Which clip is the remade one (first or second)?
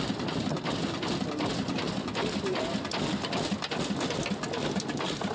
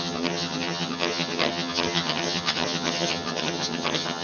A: second